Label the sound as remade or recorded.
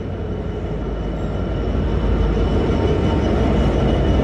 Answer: recorded